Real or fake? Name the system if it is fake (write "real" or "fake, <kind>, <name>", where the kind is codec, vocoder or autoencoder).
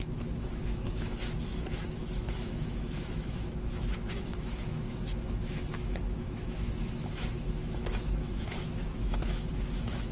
fake, autoencoder, DAC-VAE